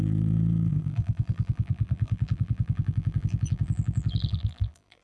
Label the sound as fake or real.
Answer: fake